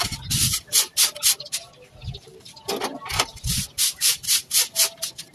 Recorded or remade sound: recorded